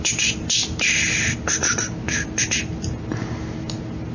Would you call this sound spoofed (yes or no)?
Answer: no